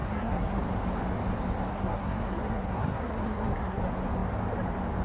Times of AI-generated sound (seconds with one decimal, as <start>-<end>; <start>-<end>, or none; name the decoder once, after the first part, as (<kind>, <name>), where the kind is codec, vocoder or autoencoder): 0.0-0.6 (codec, SNAC); 1.7-3.8